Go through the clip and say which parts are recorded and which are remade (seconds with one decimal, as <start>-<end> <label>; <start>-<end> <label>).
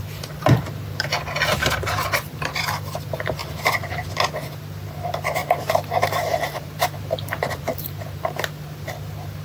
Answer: 0.0-1.5 recorded; 1.5-2.6 remade; 2.6-3.4 recorded; 3.4-4.1 remade; 4.1-5.4 recorded; 5.4-8.4 remade; 8.4-9.4 recorded